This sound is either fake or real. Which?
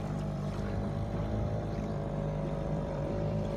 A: fake